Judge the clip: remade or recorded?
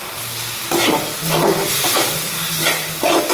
recorded